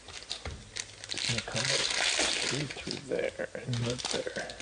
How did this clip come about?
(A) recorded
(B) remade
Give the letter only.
A